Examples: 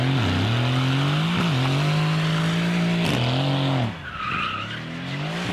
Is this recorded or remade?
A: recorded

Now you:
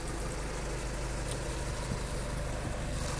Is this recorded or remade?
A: recorded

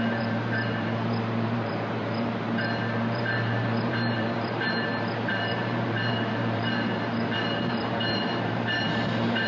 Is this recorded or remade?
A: remade